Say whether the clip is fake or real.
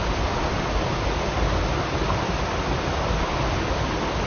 real